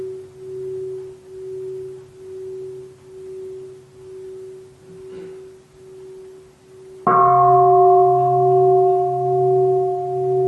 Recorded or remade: recorded